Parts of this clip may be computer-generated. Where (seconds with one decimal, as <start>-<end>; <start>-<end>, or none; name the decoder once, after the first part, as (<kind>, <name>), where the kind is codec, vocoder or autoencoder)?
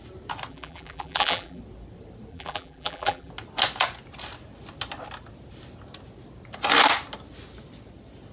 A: 0.5-1.6 (vocoder, BigVGAN v2); 2.3-3.3